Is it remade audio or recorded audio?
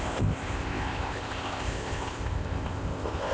remade